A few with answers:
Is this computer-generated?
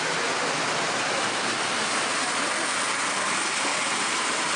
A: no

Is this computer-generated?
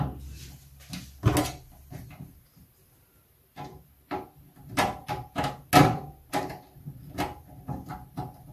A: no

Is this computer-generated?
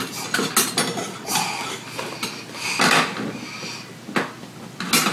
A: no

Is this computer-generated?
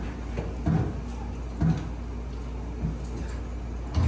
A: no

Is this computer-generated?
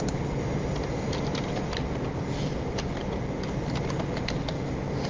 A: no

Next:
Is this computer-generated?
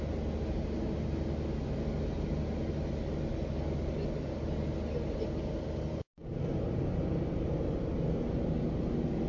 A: no